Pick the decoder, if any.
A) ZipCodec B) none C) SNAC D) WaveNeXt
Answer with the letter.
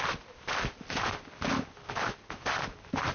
B